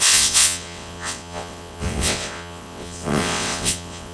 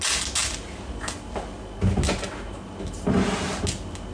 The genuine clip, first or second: second